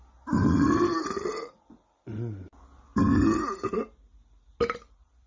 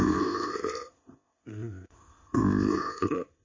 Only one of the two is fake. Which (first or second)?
second